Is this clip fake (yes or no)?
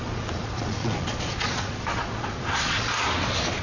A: yes